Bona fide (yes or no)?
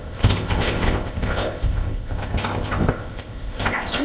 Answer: no